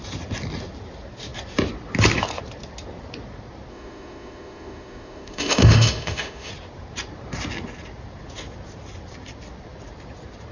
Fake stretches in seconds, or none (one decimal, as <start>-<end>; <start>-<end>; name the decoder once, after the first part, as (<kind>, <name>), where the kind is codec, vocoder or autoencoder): 3.7-6.5 (autoencoder, DAC-VAE)